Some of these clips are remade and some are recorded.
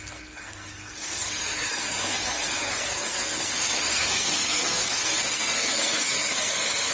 remade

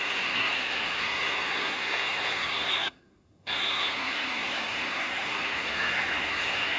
remade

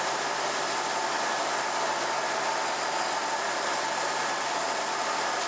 recorded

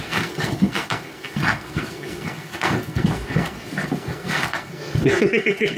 remade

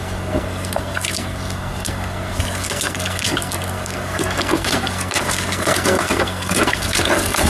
remade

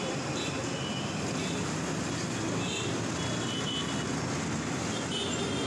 recorded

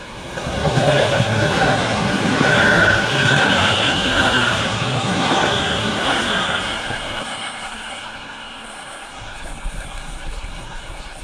remade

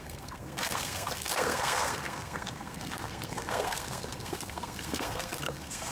remade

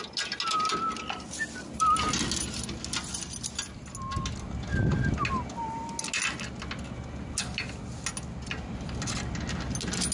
recorded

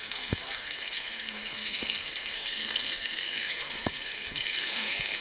remade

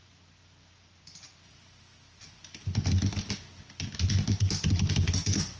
recorded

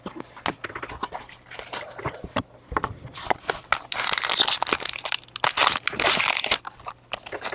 recorded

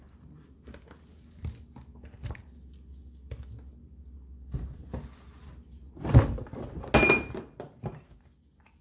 recorded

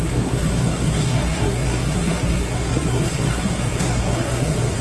remade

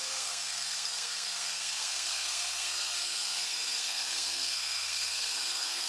remade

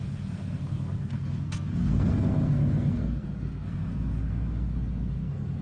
remade